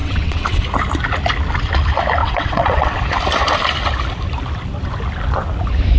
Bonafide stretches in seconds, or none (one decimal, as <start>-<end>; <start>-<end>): 0.6-2.2; 3.0-6.0